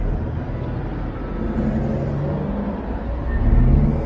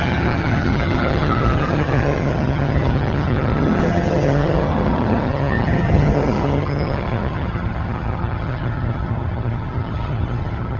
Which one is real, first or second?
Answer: first